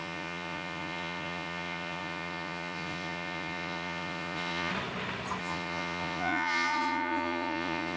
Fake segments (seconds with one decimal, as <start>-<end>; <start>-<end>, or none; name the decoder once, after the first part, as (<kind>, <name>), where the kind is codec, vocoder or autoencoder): 0.0-4.7 (vocoder, Vocos); 5.4-8.0